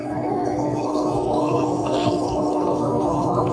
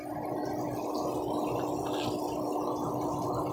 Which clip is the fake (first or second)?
first